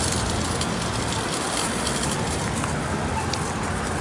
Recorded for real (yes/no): yes